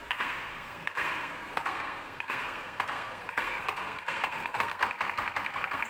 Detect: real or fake fake